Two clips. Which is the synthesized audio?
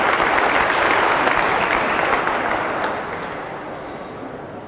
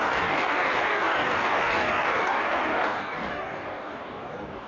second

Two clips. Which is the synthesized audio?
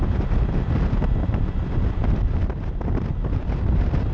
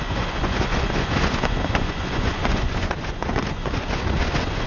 second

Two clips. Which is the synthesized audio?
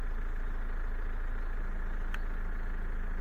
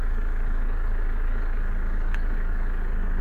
second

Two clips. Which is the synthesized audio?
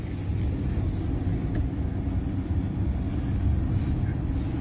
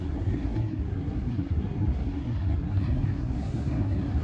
second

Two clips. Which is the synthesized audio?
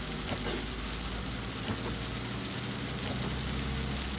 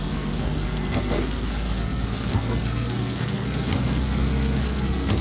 second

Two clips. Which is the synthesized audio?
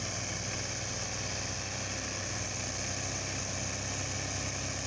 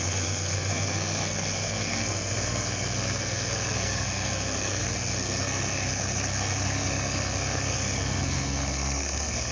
second